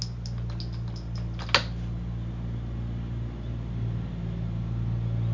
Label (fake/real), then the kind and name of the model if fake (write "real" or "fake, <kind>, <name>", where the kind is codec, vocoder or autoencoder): real